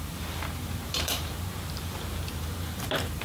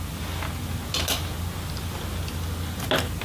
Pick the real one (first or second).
second